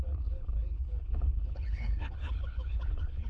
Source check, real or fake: fake